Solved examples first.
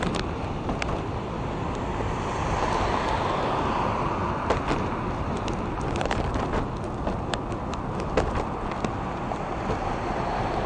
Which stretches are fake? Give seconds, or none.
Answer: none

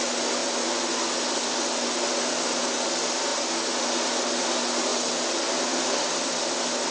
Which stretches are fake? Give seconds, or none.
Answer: none

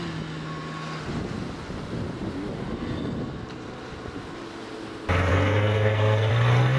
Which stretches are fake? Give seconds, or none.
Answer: 5.3-6.3